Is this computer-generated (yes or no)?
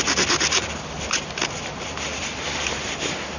no